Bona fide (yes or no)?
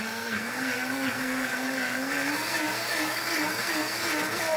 no